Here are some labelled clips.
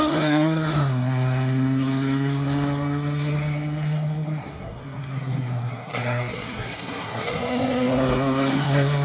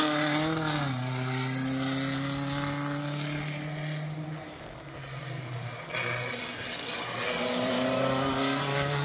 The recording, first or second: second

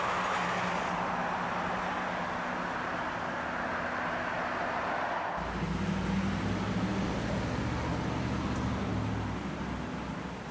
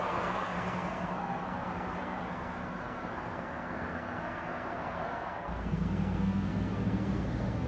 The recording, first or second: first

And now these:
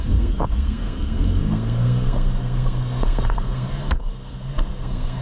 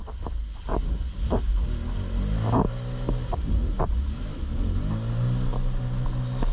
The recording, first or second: second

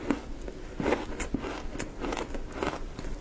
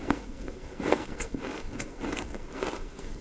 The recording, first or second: first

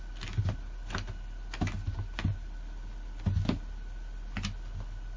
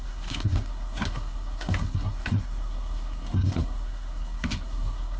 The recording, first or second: first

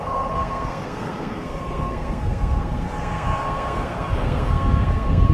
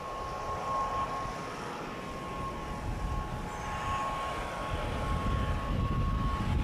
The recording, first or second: second